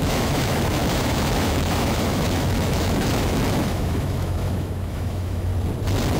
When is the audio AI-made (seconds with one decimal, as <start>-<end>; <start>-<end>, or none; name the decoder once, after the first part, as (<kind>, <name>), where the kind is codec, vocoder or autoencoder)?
0.0-5.5 (autoencoder, DAC-VAE)